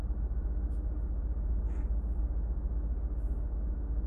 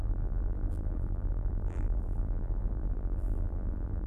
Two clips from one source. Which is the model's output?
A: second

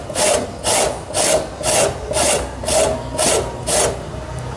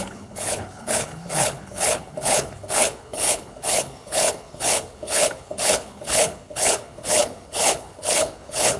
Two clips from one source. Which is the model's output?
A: second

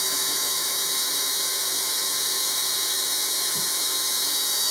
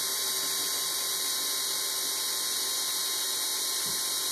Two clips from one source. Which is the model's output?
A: first